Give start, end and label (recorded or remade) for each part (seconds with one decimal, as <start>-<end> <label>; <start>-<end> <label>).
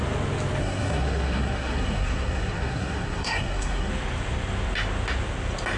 0.0-0.6 recorded; 0.6-3.9 remade; 3.9-5.8 recorded